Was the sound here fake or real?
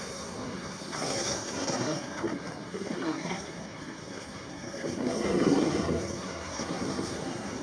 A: fake